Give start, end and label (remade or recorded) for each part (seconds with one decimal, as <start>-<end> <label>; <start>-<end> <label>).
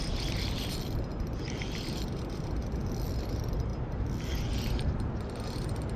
0.0-1.1 remade; 1.1-2.9 recorded; 2.9-3.7 remade; 3.7-6.0 recorded